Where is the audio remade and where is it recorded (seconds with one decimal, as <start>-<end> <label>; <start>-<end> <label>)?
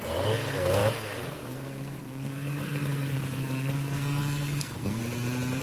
0.0-5.0 remade; 5.0-5.6 recorded